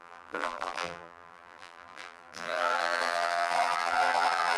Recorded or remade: remade